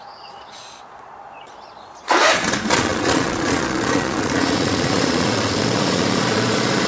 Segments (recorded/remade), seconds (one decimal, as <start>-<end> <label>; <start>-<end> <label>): 0.0-6.9 remade